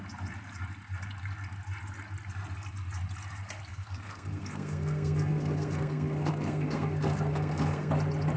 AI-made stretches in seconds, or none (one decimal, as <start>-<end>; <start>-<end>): 3.7-7.9